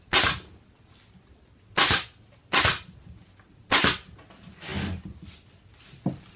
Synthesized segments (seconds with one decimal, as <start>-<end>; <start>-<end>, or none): none